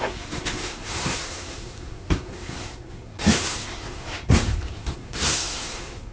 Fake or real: fake